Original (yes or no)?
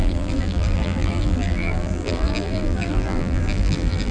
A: no